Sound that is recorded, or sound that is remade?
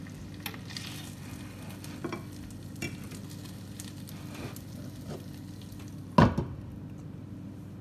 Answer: recorded